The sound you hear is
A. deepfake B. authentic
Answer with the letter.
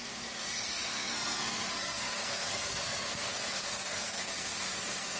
A